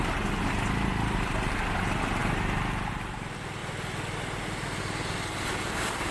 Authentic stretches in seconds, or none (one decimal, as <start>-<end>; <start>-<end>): 0.0-0.9; 1.6-6.1